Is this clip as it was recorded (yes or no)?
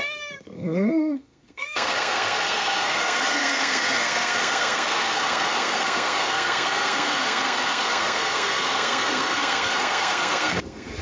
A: no